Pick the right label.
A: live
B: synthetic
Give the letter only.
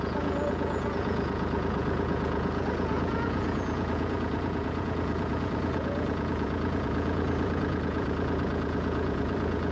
B